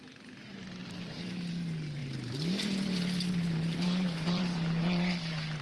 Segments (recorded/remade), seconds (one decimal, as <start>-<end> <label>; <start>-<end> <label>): 0.0-2.0 recorded; 2.0-5.6 remade